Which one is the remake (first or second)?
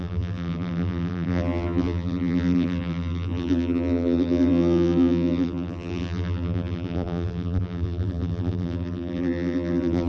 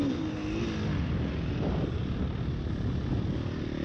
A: first